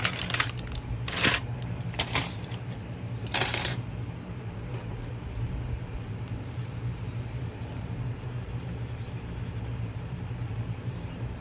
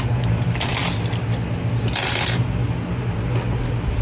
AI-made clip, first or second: first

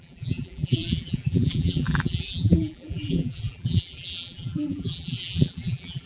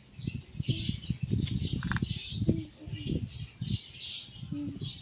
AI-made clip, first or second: first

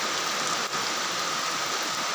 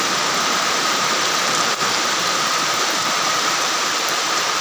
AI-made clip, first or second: second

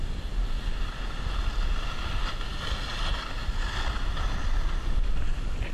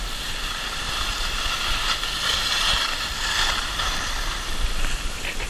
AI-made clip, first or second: second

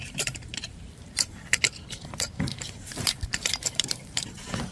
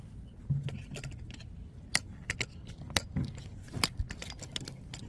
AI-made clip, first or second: first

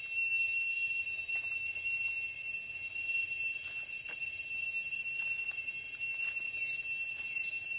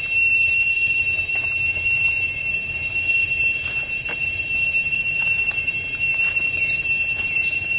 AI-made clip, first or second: second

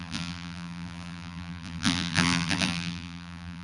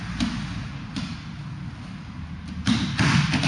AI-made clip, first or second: first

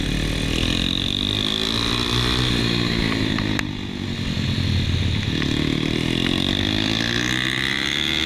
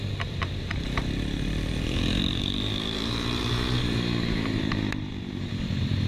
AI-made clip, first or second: second